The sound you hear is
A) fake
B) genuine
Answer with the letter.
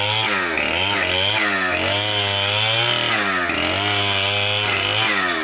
B